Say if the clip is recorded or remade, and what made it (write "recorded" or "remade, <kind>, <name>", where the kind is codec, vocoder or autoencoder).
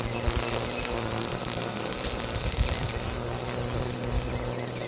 recorded